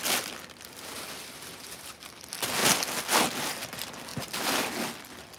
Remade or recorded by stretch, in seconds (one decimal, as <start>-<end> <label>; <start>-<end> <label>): 0.0-5.4 recorded